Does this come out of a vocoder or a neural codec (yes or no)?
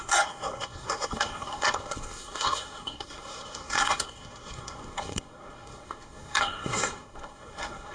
yes